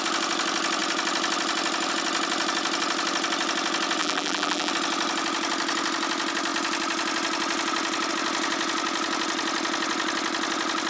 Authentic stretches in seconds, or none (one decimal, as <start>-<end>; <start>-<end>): 0.0-4.0; 4.7-10.9

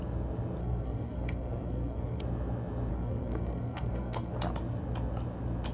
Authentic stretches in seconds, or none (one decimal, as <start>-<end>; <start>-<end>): 0.0-0.6; 2.2-2.9; 4.3-5.7

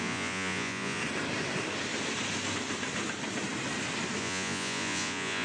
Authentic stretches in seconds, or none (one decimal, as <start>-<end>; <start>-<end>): 1.0-4.2

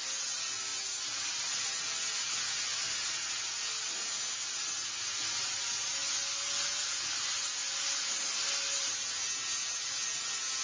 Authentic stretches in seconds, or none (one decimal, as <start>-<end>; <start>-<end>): 0.0-10.6

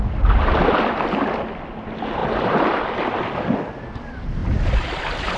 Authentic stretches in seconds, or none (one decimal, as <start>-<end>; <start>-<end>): 0.0-5.4

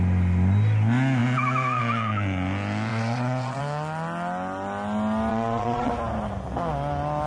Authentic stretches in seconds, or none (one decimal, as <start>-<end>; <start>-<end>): 0.0-2.9; 3.6-5.3; 5.9-7.3

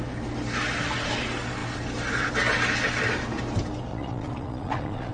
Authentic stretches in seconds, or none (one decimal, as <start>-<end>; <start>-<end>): 0.0-3.9

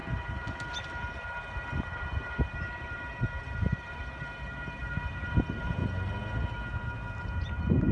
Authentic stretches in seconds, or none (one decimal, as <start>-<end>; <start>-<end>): 0.0-1.8; 5.8-7.2